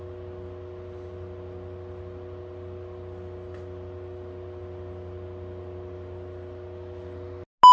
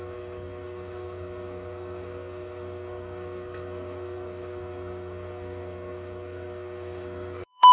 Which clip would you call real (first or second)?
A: first